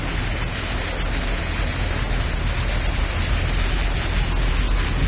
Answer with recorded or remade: recorded